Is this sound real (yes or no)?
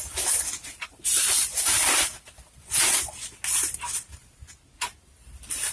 yes